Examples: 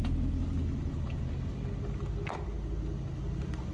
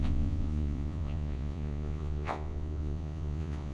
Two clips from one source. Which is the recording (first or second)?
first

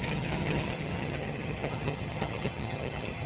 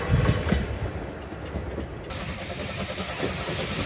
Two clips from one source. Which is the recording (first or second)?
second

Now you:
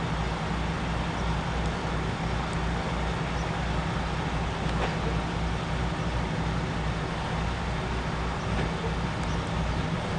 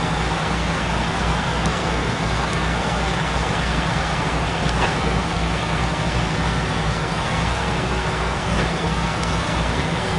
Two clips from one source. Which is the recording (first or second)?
first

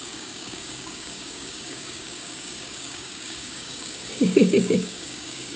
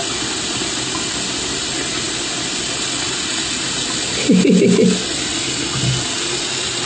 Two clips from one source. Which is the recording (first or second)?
second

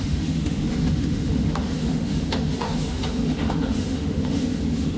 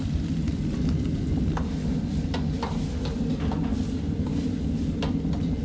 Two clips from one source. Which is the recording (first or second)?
second